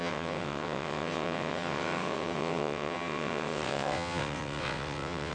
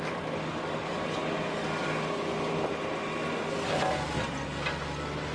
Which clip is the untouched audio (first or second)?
second